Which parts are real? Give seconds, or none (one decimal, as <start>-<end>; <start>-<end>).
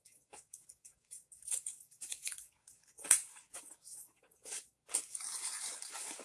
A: none